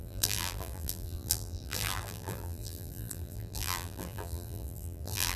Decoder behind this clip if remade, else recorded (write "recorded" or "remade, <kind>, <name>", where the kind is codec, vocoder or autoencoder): remade, vocoder, BigVGAN v2